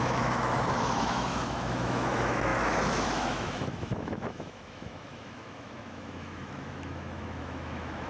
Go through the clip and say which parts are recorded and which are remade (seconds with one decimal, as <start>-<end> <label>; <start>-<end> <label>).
0.0-8.1 remade